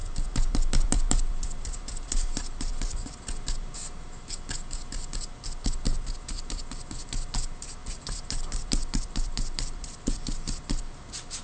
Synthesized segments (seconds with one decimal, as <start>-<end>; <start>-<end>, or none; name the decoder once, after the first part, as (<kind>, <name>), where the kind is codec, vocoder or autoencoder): 0.0-4.2 (vocoder, BigVGAN v2); 5.9-7.2; 7.8-10.8